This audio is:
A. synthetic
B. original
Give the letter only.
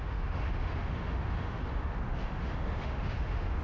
A